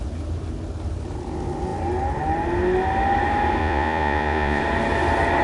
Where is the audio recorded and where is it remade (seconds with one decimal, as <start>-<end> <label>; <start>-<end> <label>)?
0.0-3.6 recorded; 3.6-4.6 remade; 4.6-5.4 recorded